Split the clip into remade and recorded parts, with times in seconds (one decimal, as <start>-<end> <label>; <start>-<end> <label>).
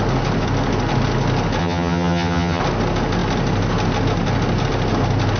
0.0-1.6 recorded; 1.6-2.6 remade; 2.6-5.4 recorded